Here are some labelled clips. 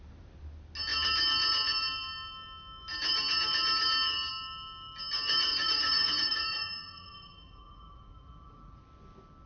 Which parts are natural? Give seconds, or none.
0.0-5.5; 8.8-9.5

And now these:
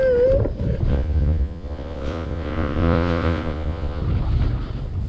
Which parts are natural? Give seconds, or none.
0.0-0.9; 4.0-5.1

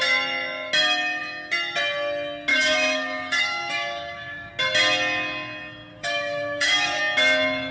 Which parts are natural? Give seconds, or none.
0.0-2.5; 4.5-5.9; 7.0-7.7

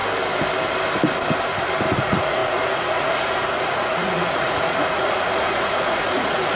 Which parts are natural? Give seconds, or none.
0.0-1.9

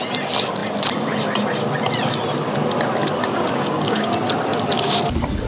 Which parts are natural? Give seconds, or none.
0.0-3.2; 4.1-5.5

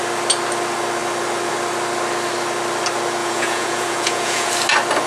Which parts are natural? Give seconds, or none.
0.0-3.2; 4.5-5.1

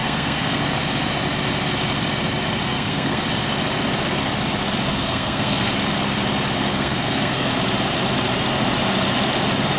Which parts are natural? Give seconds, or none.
0.6-2.7; 3.2-4.9; 5.7-6.7; 7.5-9.8

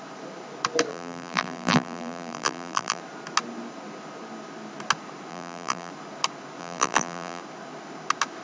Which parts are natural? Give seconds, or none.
0.0-0.9; 3.0-5.3; 5.9-6.6; 7.4-8.4